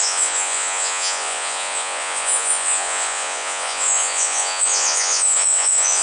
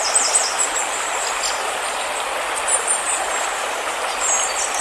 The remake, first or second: first